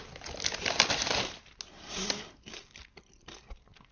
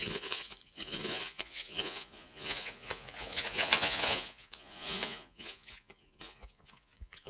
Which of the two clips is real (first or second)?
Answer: first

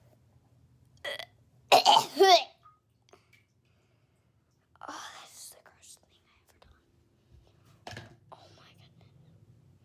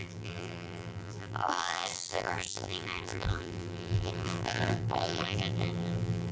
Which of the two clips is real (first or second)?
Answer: first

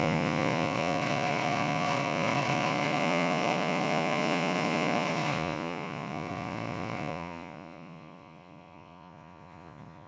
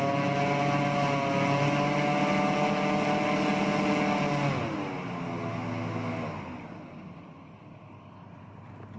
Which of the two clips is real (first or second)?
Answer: second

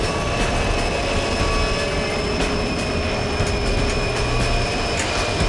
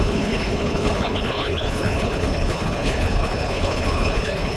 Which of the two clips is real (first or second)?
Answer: first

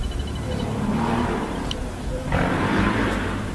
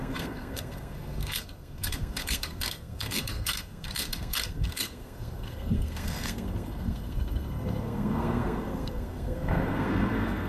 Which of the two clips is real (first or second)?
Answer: first